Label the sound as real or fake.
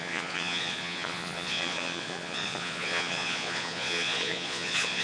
fake